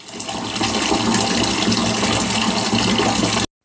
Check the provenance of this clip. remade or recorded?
recorded